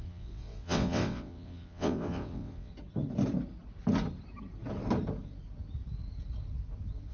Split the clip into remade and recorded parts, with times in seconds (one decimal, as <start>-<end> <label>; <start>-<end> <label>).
0.0-2.7 remade; 2.7-7.1 recorded